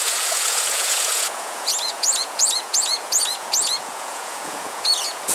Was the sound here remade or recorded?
remade